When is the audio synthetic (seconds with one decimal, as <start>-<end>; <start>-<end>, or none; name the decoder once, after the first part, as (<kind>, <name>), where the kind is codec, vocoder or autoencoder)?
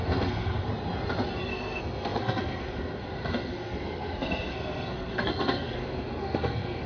0.0-0.7 (codec, SNAC); 1.5-6.9